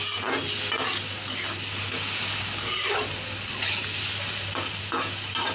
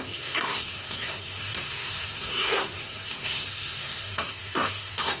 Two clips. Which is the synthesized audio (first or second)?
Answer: second